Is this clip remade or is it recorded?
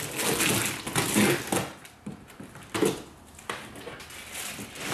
recorded